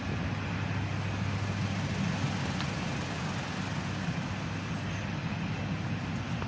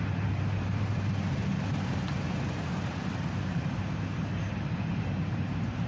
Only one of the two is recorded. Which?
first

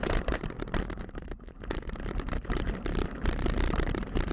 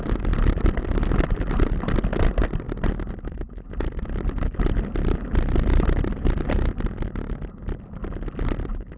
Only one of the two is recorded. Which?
second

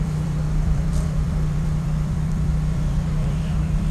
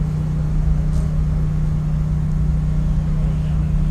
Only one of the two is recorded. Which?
second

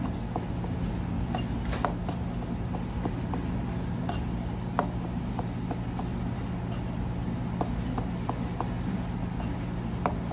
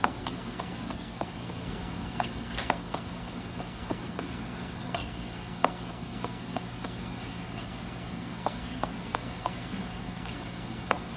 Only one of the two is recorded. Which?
first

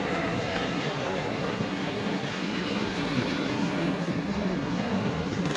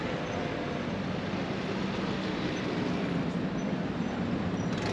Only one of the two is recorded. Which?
second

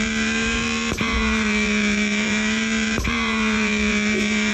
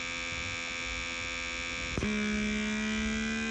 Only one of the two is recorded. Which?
second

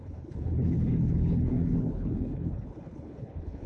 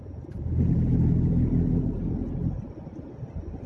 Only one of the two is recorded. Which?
second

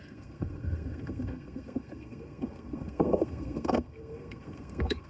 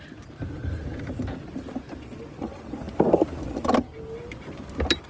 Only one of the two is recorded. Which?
second